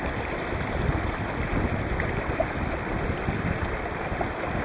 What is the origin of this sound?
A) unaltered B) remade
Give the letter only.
A